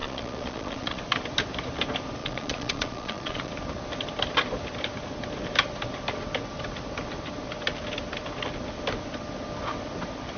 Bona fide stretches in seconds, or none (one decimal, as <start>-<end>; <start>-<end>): 1.0-2.2; 3.5-10.4